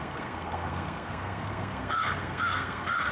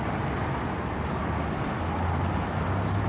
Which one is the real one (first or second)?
second